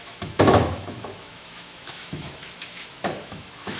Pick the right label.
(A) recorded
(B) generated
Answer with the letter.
B